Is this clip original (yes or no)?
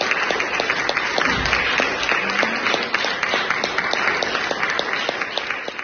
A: yes